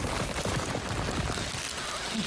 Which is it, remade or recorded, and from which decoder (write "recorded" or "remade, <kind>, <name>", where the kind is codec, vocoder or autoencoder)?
recorded